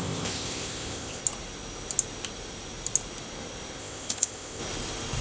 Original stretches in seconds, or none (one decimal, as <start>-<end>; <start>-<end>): 1.2-3.8; 4.6-5.2